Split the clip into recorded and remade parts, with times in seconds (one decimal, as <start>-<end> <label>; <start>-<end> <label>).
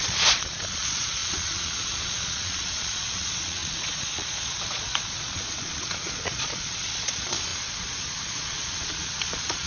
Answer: 0.0-9.7 remade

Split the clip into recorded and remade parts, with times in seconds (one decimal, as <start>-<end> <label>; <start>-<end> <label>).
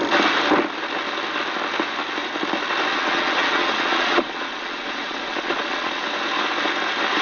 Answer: 0.0-2.9 recorded; 2.9-6.0 remade; 6.0-7.2 recorded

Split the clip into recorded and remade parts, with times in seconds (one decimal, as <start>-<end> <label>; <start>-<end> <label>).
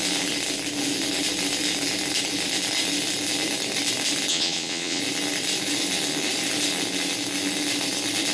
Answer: 0.0-4.3 recorded; 4.3-5.0 remade; 5.0-8.3 recorded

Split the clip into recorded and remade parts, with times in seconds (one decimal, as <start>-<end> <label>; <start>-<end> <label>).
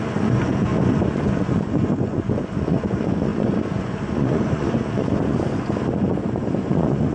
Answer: 0.0-7.1 remade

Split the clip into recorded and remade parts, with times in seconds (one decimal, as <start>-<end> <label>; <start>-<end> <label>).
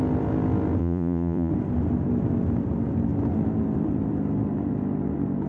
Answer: 0.0-0.8 recorded; 0.8-1.5 remade; 1.5-5.5 recorded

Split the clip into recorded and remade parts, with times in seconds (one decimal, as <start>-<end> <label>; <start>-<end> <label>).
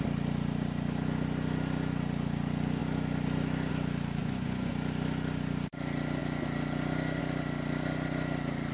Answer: 0.0-4.2 recorded; 4.2-4.7 remade; 4.7-8.7 recorded